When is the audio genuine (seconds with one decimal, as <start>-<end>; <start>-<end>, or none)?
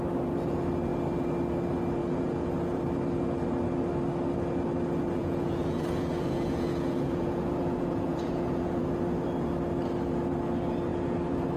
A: 0.0-2.0; 2.8-5.2; 8.9-11.6